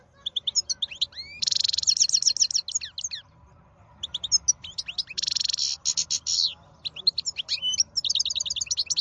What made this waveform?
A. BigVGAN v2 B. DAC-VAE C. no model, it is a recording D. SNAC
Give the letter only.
C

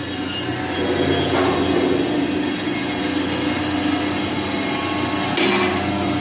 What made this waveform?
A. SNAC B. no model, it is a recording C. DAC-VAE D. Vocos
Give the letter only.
B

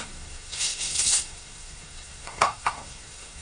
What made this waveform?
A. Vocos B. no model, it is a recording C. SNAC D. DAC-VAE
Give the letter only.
C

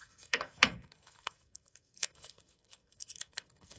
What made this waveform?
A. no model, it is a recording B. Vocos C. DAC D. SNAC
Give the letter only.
D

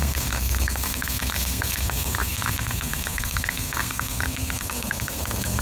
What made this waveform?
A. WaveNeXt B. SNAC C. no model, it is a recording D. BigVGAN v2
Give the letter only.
B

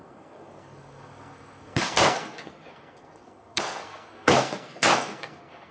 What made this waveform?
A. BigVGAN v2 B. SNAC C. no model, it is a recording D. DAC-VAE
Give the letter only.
B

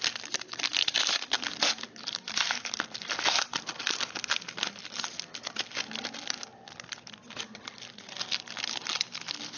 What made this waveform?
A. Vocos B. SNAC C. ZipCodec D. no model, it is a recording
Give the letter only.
D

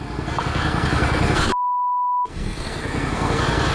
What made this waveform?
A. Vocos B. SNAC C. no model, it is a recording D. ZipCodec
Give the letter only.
B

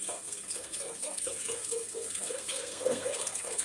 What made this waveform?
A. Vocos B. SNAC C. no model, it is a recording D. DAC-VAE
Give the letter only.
B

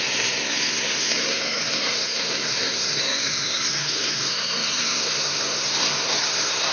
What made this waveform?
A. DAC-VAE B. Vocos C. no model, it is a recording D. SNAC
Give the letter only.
D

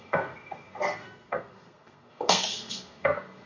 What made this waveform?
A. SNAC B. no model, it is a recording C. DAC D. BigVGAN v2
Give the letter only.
A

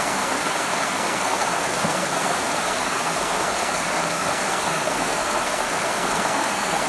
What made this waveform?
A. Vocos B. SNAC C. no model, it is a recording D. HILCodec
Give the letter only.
B